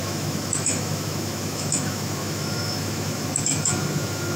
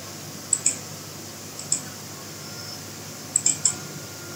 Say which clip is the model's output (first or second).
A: first